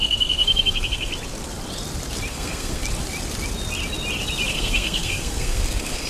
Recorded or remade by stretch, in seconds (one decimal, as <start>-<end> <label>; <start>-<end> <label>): 0.0-1.1 remade; 1.1-2.3 recorded; 2.3-2.8 remade; 2.8-4.5 recorded; 4.5-6.1 remade